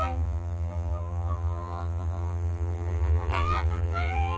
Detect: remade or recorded remade